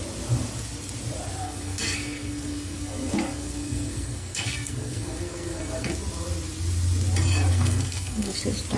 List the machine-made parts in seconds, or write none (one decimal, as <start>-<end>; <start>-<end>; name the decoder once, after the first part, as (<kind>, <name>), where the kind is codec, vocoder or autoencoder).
1.4-5.9 (codec, SNAC); 7.5-8.4